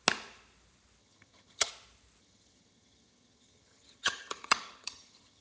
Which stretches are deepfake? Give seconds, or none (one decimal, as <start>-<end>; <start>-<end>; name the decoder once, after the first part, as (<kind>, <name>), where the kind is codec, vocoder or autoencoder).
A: 1.0-1.7 (vocoder, HiFi-GAN); 2.2-5.4